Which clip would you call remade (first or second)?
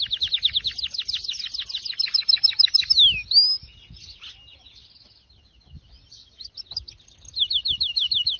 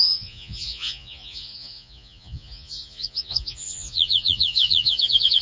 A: second